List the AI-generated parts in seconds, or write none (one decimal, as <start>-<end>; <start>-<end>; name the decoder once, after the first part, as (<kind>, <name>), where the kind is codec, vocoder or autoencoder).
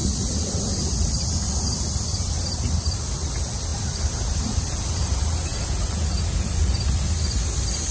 0.0-3.7 (vocoder, BigVGAN v2); 4.4-5.5; 6.4-7.9